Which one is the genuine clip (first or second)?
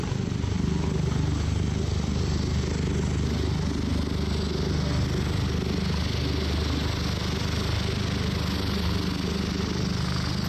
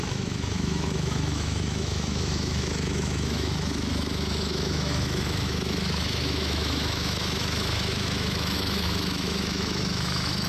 first